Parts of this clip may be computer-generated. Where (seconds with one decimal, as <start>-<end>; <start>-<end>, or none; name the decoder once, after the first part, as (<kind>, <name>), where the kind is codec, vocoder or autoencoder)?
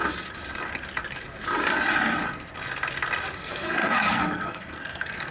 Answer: 3.4-5.3 (codec, SNAC)